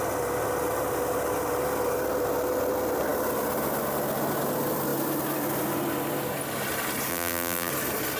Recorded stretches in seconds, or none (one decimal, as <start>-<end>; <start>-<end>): 0.0-7.1; 7.7-8.2